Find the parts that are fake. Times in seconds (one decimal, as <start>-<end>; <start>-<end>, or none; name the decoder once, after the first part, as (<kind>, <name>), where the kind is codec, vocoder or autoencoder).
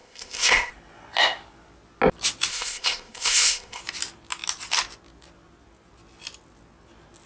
0.0-0.7 (codec, ZipCodec); 2.5-3.8